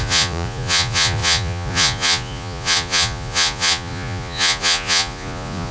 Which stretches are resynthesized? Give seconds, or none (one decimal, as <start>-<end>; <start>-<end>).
0.0-5.7